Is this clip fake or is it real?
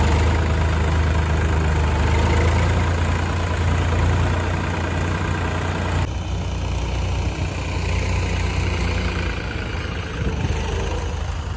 real